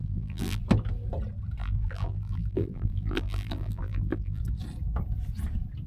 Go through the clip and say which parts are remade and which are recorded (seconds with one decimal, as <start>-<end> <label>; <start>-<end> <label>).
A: 0.0-0.6 remade; 0.6-1.6 recorded; 1.6-4.4 remade; 4.4-5.9 recorded